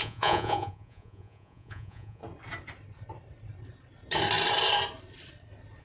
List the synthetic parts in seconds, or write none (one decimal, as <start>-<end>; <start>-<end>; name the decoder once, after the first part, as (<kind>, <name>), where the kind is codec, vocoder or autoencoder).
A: 0.0-2.2 (vocoder, Vocos)

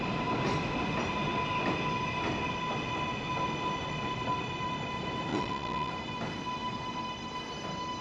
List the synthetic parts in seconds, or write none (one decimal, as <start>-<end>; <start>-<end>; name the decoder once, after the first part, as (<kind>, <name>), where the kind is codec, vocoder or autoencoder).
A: 5.3-5.9 (vocoder, Vocos)